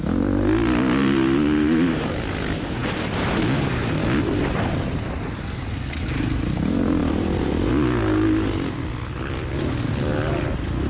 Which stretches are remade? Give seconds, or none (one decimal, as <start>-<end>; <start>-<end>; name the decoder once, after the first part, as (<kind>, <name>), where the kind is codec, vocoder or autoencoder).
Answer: none